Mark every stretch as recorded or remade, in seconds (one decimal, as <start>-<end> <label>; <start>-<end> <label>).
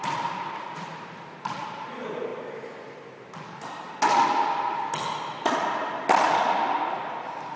0.0-2.3 remade; 2.3-6.9 recorded; 6.9-7.6 remade